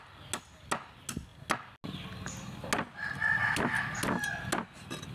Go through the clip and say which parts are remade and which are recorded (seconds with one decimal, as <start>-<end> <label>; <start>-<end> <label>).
0.0-5.1 recorded